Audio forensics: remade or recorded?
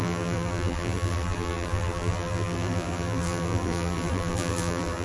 remade